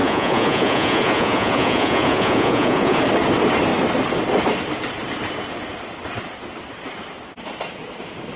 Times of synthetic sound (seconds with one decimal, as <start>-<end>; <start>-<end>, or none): 0.0-3.0